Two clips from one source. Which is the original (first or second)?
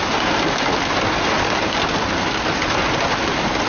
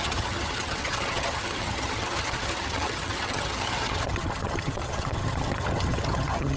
first